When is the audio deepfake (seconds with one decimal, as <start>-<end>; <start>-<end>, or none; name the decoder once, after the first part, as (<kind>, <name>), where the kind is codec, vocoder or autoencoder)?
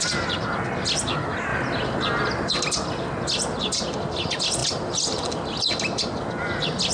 none